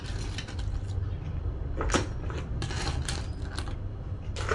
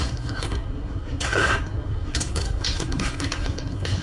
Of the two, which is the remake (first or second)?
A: second